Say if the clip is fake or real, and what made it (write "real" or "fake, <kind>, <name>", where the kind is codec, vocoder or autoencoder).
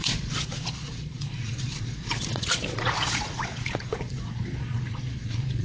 fake, vocoder, Vocos